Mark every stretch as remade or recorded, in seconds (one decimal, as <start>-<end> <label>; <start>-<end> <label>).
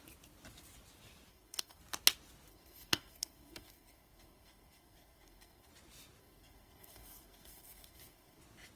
0.0-1.3 recorded; 1.3-1.8 remade; 1.8-2.5 recorded; 2.5-5.7 remade; 5.7-6.2 recorded; 6.2-8.4 remade; 8.4-8.8 recorded